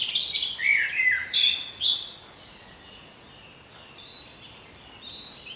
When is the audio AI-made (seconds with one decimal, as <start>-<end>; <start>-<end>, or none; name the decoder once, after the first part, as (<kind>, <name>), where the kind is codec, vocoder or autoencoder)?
1.2-3.3 (vocoder, Vocos)